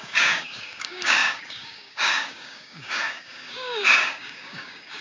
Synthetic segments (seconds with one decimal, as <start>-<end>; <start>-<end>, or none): 0.0-5.0